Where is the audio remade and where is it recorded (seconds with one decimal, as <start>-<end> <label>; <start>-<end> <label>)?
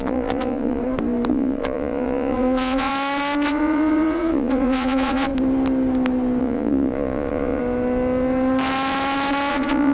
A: 0.0-0.8 remade; 0.8-1.3 recorded; 1.3-2.9 remade; 2.9-3.5 recorded; 3.5-5.3 remade; 5.3-6.4 recorded; 6.4-7.6 remade; 7.6-9.5 recorded; 9.5-9.9 remade